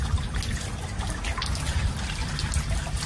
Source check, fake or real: real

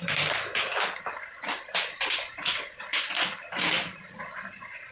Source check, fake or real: real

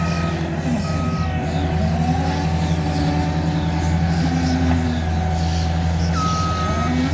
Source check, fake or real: real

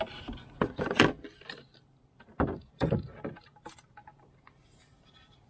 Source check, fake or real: real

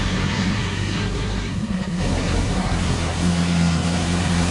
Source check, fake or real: fake